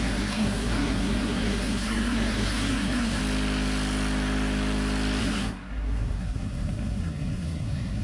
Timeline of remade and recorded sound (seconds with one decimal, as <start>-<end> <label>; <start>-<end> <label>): 0.0-3.2 remade; 3.2-5.2 recorded; 5.2-8.0 remade